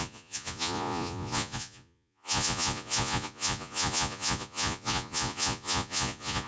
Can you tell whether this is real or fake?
fake